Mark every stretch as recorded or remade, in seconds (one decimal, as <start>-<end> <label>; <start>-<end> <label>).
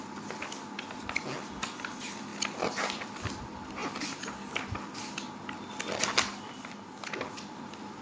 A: 0.0-8.0 recorded